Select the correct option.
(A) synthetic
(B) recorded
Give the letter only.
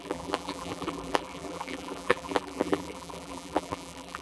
A